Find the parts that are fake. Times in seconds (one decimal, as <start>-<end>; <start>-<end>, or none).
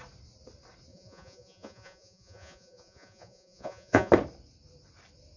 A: 0.9-4.1